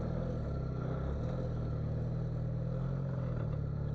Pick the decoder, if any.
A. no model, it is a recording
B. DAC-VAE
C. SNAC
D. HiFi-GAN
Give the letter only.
A